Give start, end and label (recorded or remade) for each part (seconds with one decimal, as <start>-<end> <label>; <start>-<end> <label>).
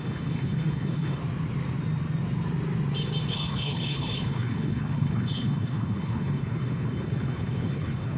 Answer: 0.0-1.2 remade; 1.2-3.3 recorded; 3.3-8.2 remade